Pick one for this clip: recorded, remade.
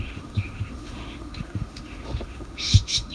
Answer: remade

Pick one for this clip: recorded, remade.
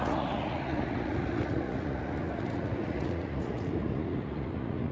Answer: remade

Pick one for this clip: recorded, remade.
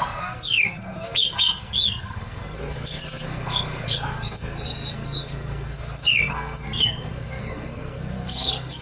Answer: remade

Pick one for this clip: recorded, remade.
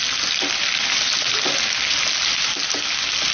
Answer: recorded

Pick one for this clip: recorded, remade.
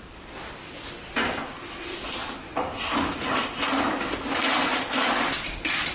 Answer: recorded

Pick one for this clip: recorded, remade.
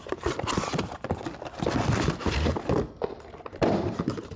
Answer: recorded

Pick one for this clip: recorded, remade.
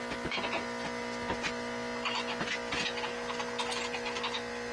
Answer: recorded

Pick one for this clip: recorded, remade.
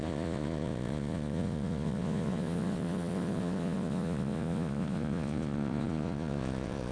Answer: remade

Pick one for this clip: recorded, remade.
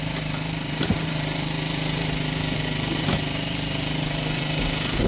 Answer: remade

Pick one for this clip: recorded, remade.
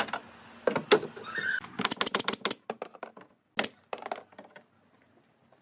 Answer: recorded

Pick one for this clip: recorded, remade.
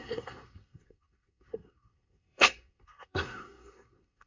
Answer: remade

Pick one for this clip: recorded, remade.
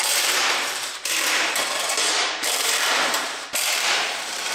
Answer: remade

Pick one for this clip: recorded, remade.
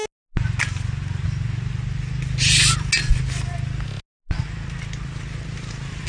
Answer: recorded